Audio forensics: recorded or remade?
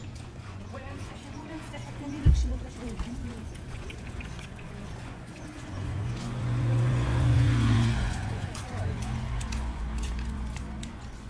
remade